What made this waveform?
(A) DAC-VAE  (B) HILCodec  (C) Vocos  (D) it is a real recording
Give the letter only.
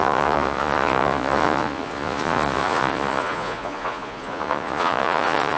C